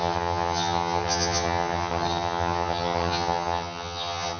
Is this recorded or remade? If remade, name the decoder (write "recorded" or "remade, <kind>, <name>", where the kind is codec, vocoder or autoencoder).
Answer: remade, vocoder, HiFi-GAN